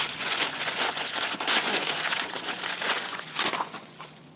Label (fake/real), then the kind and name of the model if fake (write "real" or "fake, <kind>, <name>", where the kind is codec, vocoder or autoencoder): fake, vocoder, Vocos